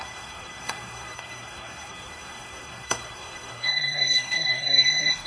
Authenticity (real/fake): fake